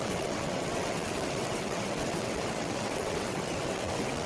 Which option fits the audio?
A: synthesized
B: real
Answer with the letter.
A